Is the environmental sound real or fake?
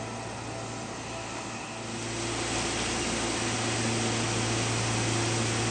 real